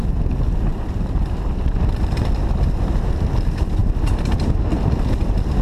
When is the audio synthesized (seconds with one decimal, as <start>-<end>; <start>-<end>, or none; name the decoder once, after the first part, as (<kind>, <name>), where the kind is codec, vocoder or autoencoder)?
0.7-1.8 (vocoder, BigVGAN v2)